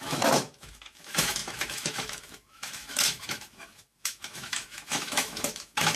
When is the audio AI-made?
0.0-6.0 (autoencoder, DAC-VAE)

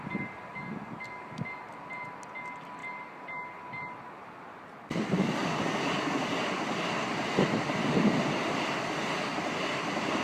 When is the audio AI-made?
none

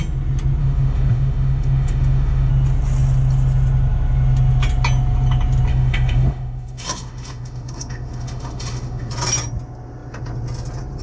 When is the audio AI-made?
0.6-2.5 (autoencoder, DAC-VAE); 5.7-9.1

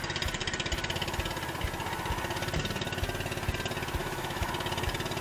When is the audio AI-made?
4.0-4.5 (autoencoder, DAC-VAE)